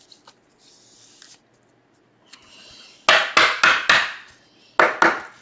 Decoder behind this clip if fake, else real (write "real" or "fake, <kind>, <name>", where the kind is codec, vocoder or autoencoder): real